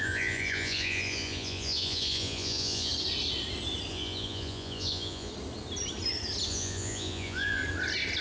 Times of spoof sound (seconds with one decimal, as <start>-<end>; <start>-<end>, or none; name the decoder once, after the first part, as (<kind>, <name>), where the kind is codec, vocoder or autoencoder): 0.0-2.9 (vocoder, Vocos); 3.9-5.3; 6.5-7.6